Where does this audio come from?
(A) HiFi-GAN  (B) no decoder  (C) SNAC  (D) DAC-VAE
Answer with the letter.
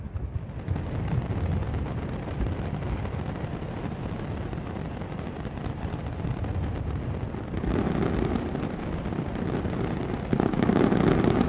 B